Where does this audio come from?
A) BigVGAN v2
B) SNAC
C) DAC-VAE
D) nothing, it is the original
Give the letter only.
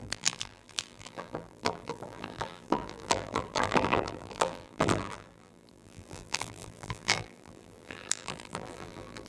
A